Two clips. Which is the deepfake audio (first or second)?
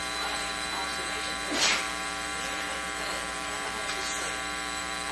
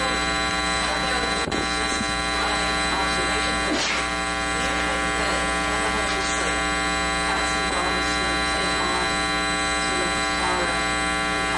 first